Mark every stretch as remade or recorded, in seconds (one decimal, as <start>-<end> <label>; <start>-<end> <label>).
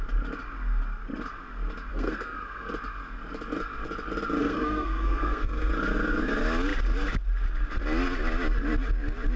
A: 0.0-1.9 recorded; 1.9-2.7 remade; 2.7-4.4 recorded; 4.4-5.7 remade; 5.7-9.4 recorded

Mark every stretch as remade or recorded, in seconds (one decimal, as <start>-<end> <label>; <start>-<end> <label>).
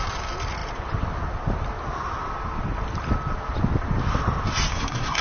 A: 0.0-4.7 recorded; 4.7-5.2 remade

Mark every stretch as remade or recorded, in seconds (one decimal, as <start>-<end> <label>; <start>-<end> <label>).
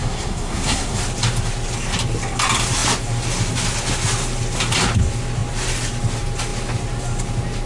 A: 0.0-1.0 remade; 1.0-7.7 recorded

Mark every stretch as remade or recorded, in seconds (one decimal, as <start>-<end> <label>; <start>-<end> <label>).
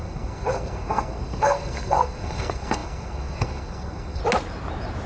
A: 0.0-4.2 remade; 4.2-5.1 recorded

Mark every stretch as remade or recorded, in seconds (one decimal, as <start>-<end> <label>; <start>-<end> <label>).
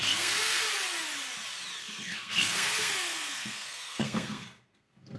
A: 0.0-0.6 remade; 0.6-1.8 recorded; 1.8-5.2 remade